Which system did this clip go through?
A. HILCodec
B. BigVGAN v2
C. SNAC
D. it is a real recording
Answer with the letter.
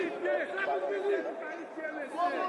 B